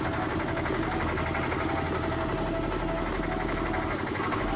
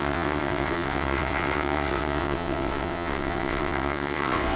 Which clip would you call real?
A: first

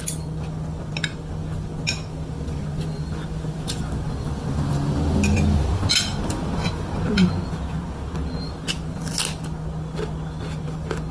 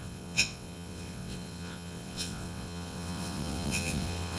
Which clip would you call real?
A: first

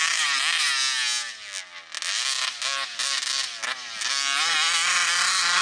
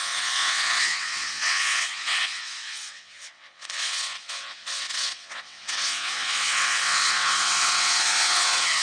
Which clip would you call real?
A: first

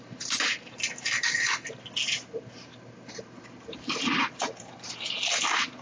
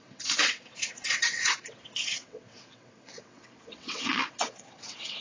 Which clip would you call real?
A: first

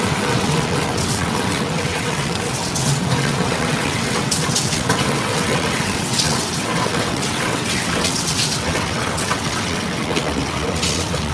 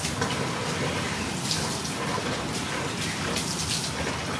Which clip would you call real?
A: second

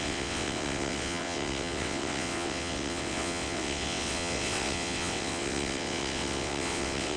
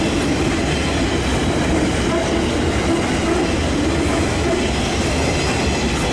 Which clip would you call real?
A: second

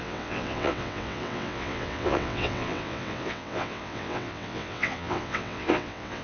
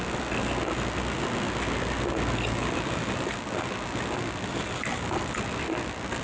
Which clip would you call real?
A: second